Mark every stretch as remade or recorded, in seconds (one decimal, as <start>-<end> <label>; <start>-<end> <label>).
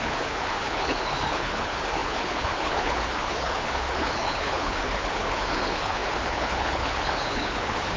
0.0-8.0 remade